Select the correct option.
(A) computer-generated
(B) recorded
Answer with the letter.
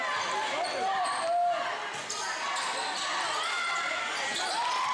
B